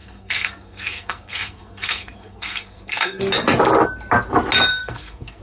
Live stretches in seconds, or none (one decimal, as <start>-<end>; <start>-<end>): 3.2-4.7